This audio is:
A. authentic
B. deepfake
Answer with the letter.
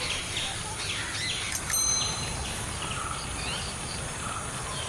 A